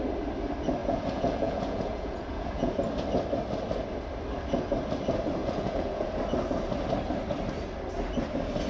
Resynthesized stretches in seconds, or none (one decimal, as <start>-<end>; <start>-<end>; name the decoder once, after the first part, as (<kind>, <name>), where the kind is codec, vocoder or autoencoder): 0.8-2.7 (vocoder, Vocos); 5.4-6.2